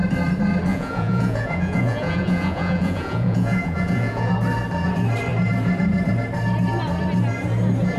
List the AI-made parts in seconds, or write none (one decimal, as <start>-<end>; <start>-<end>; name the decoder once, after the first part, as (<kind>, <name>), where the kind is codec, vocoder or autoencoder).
0.7-4.3 (vocoder, Vocos)